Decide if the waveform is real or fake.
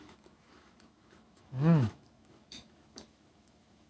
fake